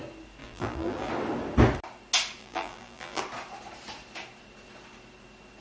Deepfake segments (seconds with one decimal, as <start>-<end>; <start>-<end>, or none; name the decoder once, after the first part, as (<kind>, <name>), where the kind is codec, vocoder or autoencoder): 0.4-1.1 (vocoder, BigVGAN v2); 2.4-3.2